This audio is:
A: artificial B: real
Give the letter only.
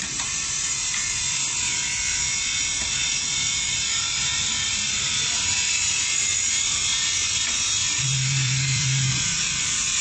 A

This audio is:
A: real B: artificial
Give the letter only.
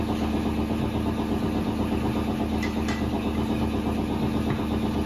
A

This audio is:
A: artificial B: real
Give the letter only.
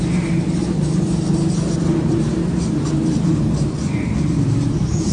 A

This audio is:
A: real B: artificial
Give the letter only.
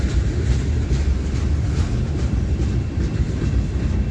B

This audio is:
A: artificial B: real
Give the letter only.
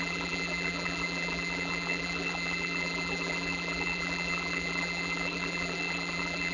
A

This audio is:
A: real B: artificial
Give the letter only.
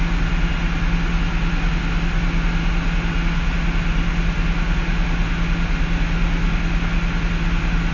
A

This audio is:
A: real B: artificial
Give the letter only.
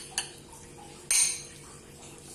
A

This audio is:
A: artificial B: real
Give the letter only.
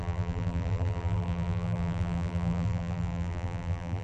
A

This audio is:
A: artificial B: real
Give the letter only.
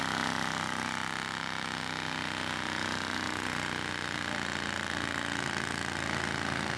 B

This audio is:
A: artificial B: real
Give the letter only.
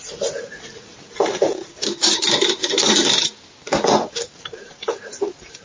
A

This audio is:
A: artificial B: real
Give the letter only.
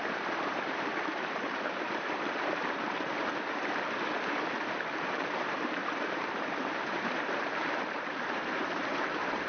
A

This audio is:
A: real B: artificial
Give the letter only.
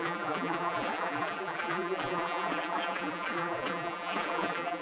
B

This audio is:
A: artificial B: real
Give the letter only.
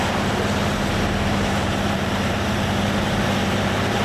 A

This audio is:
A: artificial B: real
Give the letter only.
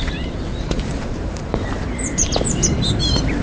A